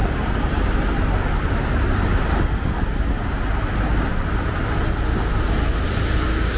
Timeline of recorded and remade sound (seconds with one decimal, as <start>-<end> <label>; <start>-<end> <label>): 0.0-6.6 recorded